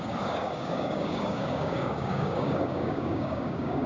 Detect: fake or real fake